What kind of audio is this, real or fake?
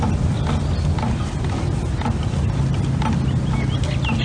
real